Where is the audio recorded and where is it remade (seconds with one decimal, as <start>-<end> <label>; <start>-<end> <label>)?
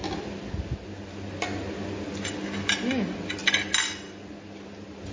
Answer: 0.0-5.1 recorded